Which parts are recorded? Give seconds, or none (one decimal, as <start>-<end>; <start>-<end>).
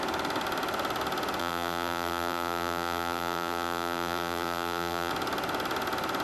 0.0-1.4; 5.1-6.2